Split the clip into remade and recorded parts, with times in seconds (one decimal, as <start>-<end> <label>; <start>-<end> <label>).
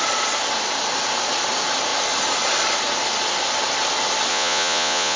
0.0-4.3 recorded; 4.3-5.2 remade